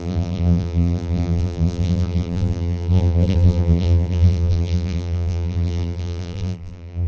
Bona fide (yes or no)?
no